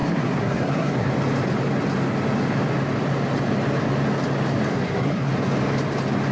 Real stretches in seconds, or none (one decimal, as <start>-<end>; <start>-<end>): 1.1-4.7; 5.3-6.3